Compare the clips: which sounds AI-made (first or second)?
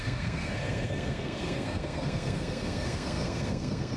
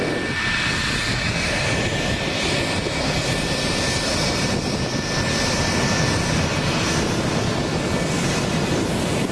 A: first